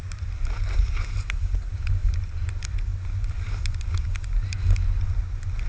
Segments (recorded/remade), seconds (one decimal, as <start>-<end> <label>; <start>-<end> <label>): 0.0-2.0 recorded; 2.0-2.5 remade; 2.5-5.7 recorded

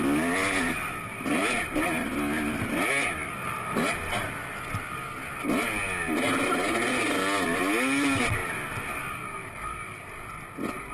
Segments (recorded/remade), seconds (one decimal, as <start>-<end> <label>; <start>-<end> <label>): 0.0-10.9 recorded

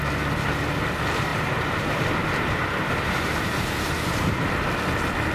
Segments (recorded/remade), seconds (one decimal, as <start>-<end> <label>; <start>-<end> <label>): 0.0-1.3 recorded; 1.3-4.5 remade; 4.5-5.3 recorded

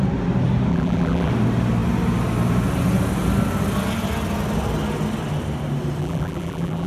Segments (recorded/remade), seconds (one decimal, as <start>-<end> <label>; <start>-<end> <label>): 0.0-0.7 recorded; 0.7-1.3 remade; 1.3-6.0 recorded; 6.0-6.9 remade

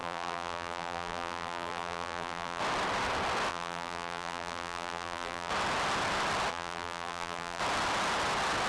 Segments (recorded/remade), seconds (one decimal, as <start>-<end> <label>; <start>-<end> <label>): 0.0-2.6 remade; 2.6-3.5 recorded; 3.5-5.5 remade; 5.5-6.5 recorded; 6.5-7.6 remade; 7.6-8.7 recorded

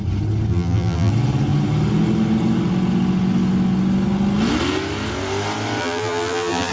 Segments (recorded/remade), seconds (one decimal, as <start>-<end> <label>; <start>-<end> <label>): 0.0-0.5 recorded; 0.5-1.1 remade; 1.1-5.8 recorded; 5.8-6.7 remade